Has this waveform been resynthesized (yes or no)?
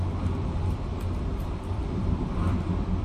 yes